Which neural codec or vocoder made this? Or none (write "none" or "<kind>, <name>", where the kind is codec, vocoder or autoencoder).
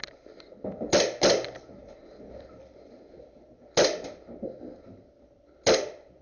none